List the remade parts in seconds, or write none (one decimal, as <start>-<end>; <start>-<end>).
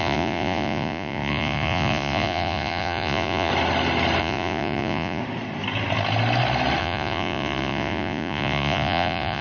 0.0-3.5; 4.2-5.2; 6.8-9.4